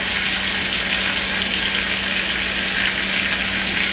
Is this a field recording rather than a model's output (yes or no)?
yes